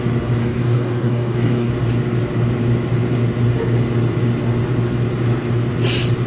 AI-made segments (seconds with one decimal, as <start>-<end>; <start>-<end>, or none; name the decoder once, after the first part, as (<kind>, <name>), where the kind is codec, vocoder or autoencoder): 0.4-1.7 (codec, DAC)